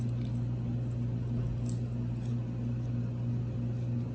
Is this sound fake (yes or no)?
no